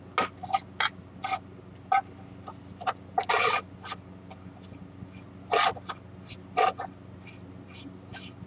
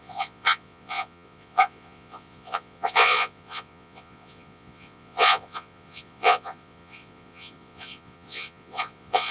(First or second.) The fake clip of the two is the second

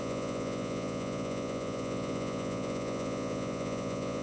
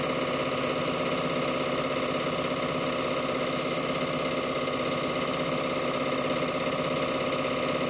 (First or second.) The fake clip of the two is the first